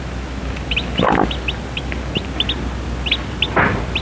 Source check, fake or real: real